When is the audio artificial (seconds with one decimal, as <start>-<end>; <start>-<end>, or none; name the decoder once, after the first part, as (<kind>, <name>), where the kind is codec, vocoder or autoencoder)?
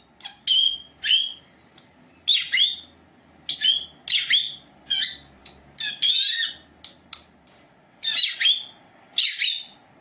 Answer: none